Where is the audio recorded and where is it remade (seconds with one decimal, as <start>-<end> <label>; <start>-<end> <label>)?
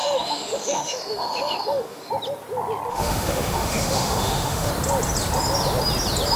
0.0-2.1 remade; 2.1-2.9 recorded; 2.9-4.7 remade; 4.7-6.4 recorded